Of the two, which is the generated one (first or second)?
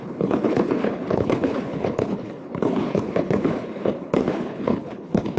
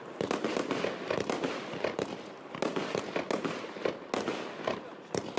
first